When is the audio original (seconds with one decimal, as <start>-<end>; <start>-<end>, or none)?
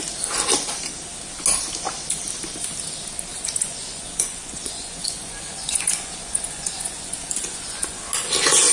0.0-3.3; 8.0-8.7